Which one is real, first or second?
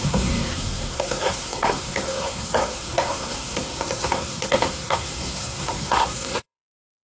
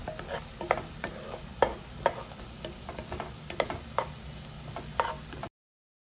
second